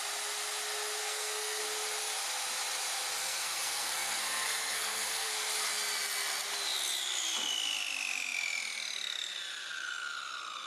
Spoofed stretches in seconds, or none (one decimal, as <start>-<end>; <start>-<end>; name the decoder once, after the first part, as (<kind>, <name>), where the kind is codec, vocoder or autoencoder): 1.0-1.6 (codec, SNAC); 3.2-5.5